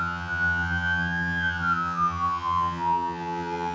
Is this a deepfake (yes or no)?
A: yes